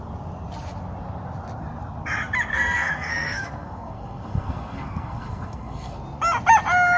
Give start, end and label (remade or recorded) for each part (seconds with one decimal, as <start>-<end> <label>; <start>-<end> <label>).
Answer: 0.0-2.5 recorded; 2.5-6.0 remade; 6.0-7.0 recorded